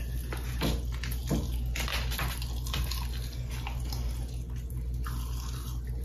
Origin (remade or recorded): recorded